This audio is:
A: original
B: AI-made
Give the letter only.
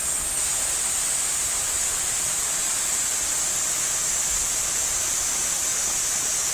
A